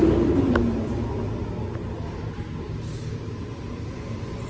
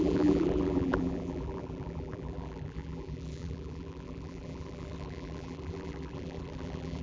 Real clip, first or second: first